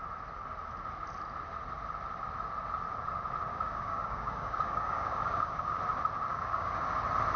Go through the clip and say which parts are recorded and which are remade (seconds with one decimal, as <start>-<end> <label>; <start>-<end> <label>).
0.0-3.5 recorded; 3.5-5.8 remade; 5.8-6.3 recorded; 6.3-6.8 remade; 6.8-7.4 recorded